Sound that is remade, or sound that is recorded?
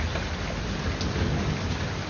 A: recorded